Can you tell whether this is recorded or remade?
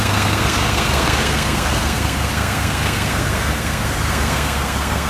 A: remade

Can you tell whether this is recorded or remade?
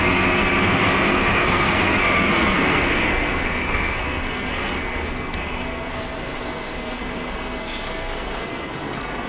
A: remade